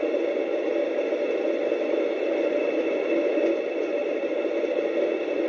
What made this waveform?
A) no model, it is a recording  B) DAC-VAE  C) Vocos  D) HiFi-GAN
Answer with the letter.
A